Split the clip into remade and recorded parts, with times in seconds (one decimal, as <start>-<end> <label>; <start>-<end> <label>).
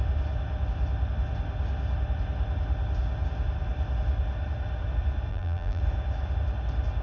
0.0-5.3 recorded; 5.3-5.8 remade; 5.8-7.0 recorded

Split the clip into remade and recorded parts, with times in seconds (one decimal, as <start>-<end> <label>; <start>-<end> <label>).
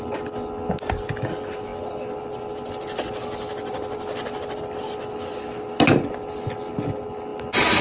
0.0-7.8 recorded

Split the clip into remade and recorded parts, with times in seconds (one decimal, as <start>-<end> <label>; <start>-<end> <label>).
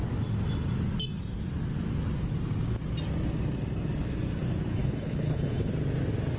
0.0-4.7 recorded; 4.7-5.7 remade; 5.7-6.4 recorded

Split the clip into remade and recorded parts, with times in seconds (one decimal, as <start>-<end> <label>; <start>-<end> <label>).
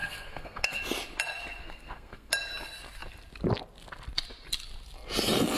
0.0-0.8 remade; 0.8-1.6 recorded; 1.6-2.3 remade; 2.3-5.6 recorded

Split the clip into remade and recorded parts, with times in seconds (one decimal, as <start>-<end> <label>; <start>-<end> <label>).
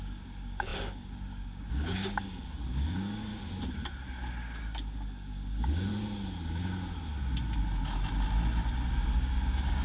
0.0-3.3 remade; 3.3-4.4 recorded; 4.4-5.9 remade; 5.9-8.9 recorded; 8.9-9.8 remade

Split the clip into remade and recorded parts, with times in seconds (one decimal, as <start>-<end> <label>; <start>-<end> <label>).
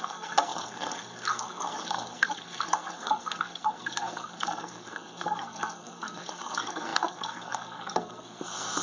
0.0-8.8 remade